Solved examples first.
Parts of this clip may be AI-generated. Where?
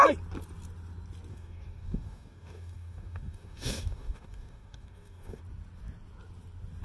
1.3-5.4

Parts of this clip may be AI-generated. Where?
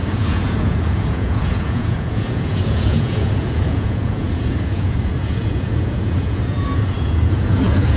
0.0-8.0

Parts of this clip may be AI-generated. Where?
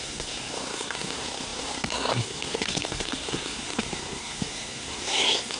0.0-5.6